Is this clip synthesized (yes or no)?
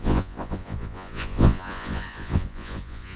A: yes